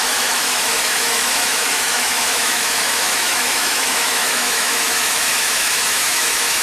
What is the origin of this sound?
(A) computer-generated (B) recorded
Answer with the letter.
A